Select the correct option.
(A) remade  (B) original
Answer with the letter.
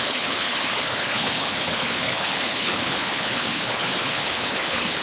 A